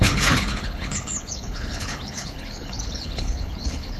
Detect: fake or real fake